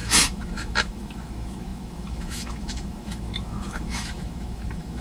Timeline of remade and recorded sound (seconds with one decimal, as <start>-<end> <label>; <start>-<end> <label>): 0.0-5.0 remade